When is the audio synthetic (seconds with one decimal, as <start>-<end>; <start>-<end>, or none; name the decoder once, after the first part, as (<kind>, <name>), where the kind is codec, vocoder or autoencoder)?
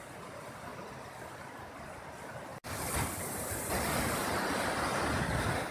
4.2-5.0 (vocoder, BigVGAN v2)